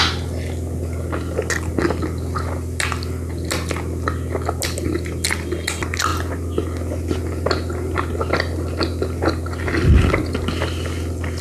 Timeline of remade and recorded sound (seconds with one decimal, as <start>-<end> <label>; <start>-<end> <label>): 0.0-11.4 recorded